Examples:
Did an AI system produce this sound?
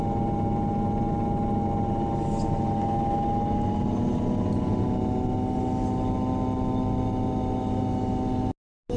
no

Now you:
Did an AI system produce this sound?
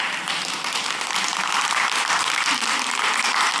yes